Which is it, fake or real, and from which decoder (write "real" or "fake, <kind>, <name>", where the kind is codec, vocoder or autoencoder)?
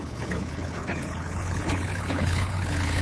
fake, codec, HILCodec